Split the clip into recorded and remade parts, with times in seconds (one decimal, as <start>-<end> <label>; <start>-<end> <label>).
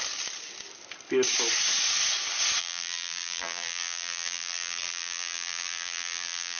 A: 0.0-2.6 recorded; 2.6-6.6 remade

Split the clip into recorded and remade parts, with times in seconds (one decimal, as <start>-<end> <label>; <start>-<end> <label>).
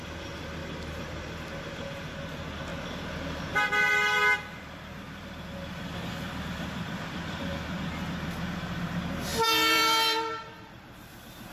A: 0.0-0.6 recorded; 0.6-1.8 remade; 1.8-9.3 recorded; 9.3-11.1 remade; 11.1-11.5 recorded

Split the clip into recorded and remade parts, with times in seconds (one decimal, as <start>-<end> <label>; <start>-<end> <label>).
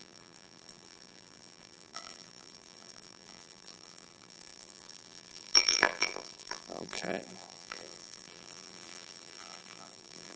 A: 0.0-10.4 remade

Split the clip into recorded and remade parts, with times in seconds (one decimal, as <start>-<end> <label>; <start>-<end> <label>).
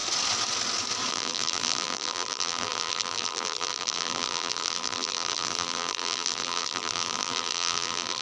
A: 0.0-1.1 recorded; 1.1-8.2 remade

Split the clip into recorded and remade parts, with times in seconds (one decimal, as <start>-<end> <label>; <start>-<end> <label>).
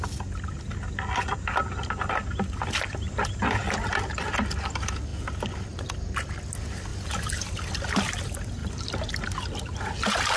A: 0.0-10.4 recorded